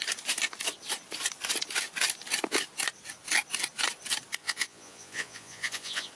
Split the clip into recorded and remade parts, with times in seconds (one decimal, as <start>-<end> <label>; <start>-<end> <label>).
0.0-4.4 recorded; 4.4-6.1 remade